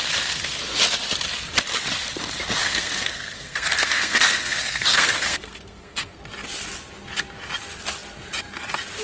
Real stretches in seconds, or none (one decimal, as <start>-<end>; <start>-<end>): 0.0-2.6; 6.2-9.0